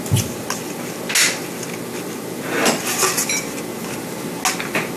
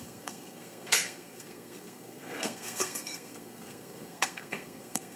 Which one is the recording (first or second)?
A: first